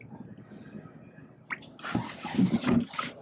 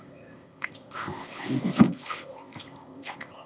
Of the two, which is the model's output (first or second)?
second